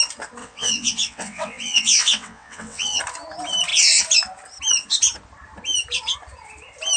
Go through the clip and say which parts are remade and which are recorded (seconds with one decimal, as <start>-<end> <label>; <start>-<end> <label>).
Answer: 0.0-0.4 recorded; 0.4-3.0 remade; 3.0-7.0 recorded